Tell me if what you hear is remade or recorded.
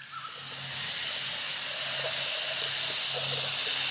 recorded